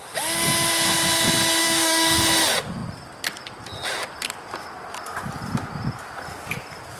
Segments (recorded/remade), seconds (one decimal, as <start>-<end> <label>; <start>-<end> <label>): 0.0-1.6 recorded; 1.6-2.2 remade; 2.2-7.0 recorded